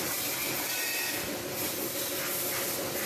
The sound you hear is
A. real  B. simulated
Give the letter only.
A